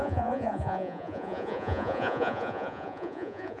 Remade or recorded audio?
remade